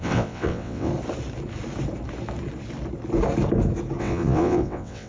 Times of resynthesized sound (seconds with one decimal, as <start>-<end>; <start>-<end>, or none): 0.0-0.9; 4.0-5.1